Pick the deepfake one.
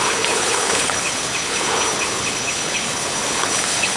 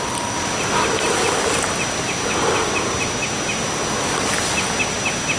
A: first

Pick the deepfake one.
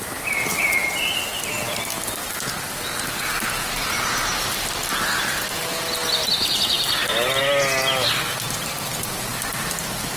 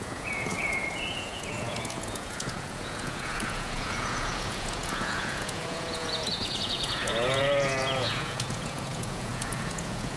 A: second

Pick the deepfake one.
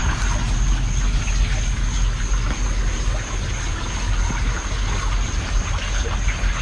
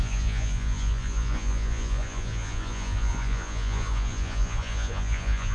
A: second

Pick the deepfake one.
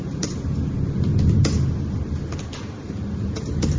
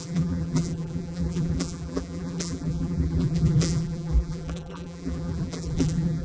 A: second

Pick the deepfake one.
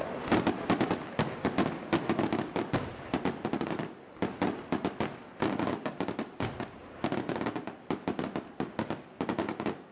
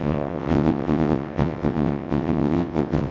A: second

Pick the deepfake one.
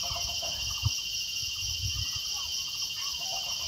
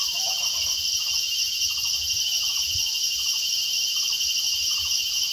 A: second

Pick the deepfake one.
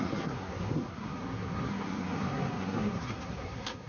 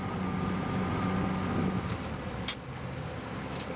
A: first